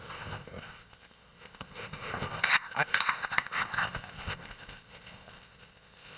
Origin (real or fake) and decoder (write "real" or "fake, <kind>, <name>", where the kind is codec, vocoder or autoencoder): fake, codec, ZipCodec